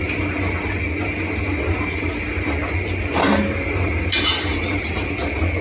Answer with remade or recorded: recorded